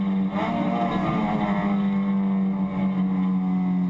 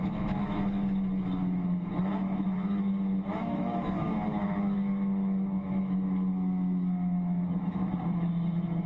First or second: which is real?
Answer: first